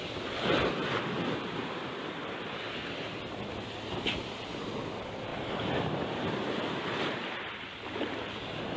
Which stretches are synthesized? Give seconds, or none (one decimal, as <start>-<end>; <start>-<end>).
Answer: none